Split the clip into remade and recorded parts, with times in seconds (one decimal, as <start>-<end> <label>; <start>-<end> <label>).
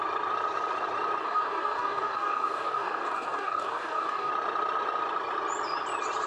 0.0-1.2 recorded; 1.2-4.3 remade; 4.3-6.3 recorded